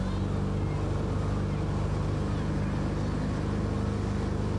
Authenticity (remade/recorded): recorded